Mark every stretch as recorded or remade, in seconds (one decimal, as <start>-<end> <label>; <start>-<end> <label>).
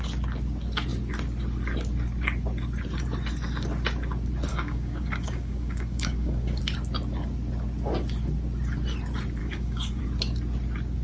0.0-4.5 recorded; 4.5-6.6 remade; 6.6-9.4 recorded; 9.4-10.0 remade; 10.0-11.0 recorded